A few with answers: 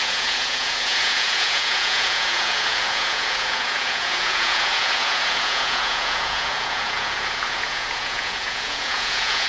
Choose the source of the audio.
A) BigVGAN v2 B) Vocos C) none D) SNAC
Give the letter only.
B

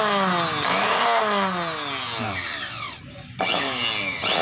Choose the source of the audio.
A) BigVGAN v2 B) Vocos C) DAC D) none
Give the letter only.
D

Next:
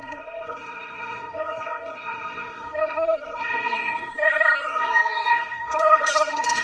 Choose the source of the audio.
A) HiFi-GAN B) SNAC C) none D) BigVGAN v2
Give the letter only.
B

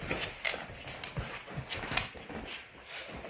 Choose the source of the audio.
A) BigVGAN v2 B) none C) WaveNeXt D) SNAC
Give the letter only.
B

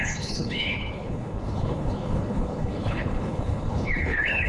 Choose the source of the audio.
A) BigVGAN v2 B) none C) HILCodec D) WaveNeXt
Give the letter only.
C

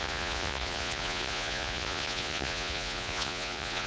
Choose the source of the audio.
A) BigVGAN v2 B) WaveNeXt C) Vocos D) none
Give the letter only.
C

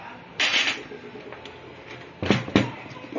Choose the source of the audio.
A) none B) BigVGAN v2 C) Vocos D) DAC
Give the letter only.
A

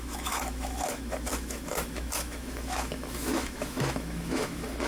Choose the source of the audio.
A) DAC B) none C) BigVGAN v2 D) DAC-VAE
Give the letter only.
D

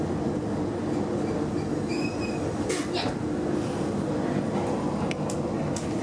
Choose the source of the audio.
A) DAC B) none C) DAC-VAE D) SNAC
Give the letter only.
B